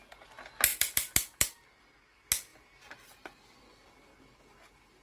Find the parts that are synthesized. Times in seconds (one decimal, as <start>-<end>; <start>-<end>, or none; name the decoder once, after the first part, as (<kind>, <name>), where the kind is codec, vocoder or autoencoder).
0.7-1.8 (vocoder, BigVGAN v2); 2.5-4.1